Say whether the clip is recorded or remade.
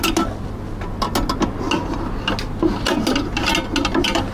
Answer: recorded